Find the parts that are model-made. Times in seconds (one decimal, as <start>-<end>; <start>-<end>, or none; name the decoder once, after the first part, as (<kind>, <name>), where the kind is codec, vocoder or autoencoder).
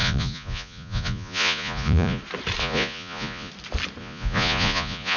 0.0-2.2 (vocoder, Vocos); 2.6-3.5; 4.0-5.2